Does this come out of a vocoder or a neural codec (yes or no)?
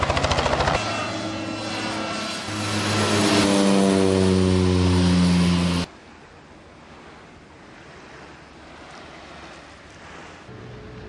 no